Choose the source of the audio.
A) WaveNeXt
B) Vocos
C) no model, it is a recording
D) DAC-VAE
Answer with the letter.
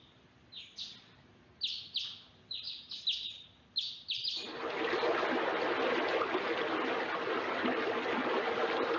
C